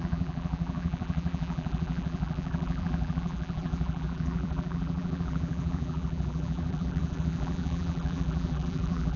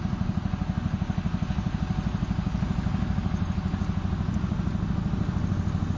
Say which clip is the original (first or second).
second